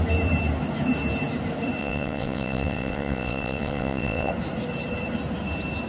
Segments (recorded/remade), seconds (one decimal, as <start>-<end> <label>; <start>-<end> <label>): 0.0-1.8 recorded; 1.8-4.3 remade; 4.3-5.9 recorded